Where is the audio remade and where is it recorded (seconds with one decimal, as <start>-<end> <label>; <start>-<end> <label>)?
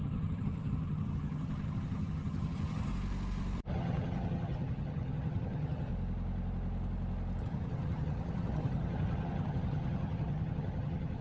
0.0-2.9 remade; 2.9-3.7 recorded; 3.7-5.9 remade; 5.9-7.4 recorded; 7.4-11.2 remade